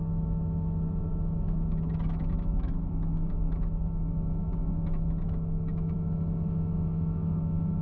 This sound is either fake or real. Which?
fake